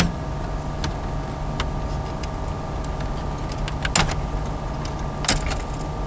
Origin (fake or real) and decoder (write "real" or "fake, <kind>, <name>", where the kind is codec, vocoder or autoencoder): real